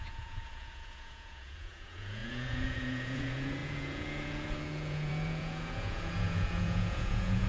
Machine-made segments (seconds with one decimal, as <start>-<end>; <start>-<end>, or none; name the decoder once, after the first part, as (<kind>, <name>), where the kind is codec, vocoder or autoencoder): 0.0-7.5 (vocoder, Vocos)